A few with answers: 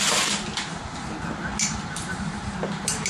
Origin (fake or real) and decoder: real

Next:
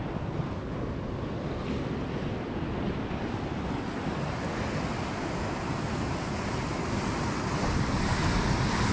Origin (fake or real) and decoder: real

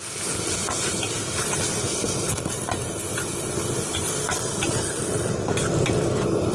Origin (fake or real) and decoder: real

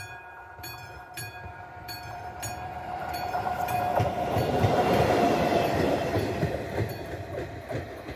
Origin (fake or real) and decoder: fake, vocoder, BigVGAN v2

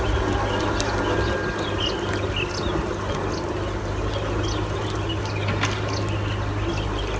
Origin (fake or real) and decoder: real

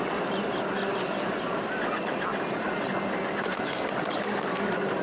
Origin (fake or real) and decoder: real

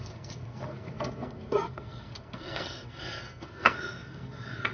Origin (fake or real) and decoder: fake, codec, SNAC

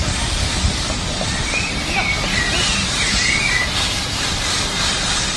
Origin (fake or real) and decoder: real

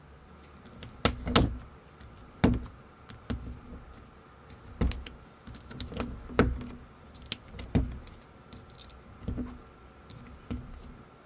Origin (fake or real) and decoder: real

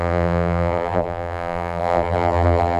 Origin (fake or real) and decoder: fake, vocoder, BigVGAN v2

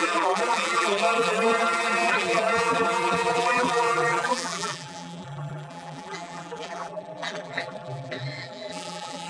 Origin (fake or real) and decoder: fake, vocoder, BigVGAN v2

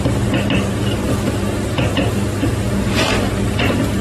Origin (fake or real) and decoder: real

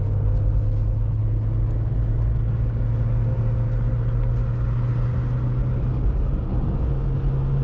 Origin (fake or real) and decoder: real